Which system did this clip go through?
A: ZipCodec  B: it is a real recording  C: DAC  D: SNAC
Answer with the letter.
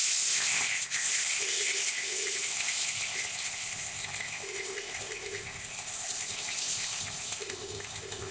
A